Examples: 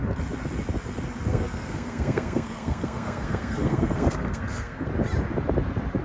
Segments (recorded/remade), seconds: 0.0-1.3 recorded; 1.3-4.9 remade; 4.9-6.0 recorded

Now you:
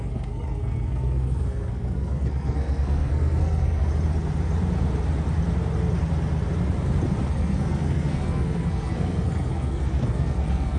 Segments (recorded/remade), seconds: 0.0-3.9 remade; 3.9-7.3 recorded; 7.3-10.8 remade

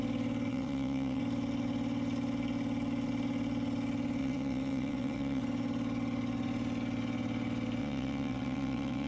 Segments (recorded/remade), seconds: 0.0-0.5 recorded; 0.5-1.2 remade; 1.2-4.2 recorded; 4.2-5.4 remade; 5.4-7.8 recorded; 7.8-9.1 remade

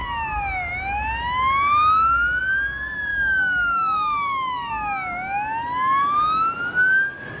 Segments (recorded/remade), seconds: 0.0-3.1 recorded; 3.1-4.7 remade; 4.7-7.4 recorded

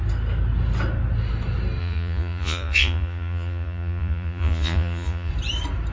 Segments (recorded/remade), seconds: 0.0-1.8 recorded; 1.8-5.3 remade; 5.3-5.9 recorded

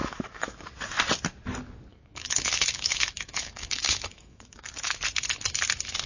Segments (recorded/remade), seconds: 0.0-0.7 remade; 0.7-1.9 recorded; 1.9-5.0 remade; 5.0-6.1 recorded

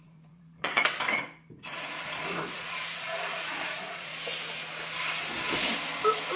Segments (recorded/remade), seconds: 0.0-0.8 remade; 0.8-1.5 recorded; 1.5-4.1 remade; 4.1-6.4 recorded

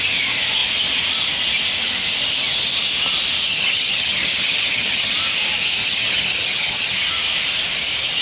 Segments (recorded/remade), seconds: 0.0-3.5 recorded; 3.5-5.1 remade; 5.1-5.8 recorded; 5.8-7.1 remade; 7.1-8.2 recorded